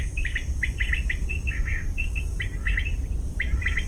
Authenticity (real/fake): fake